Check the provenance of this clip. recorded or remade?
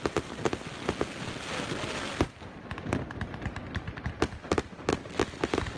recorded